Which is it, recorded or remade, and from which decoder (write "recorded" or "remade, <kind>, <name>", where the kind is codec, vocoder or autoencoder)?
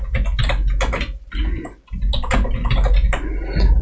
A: recorded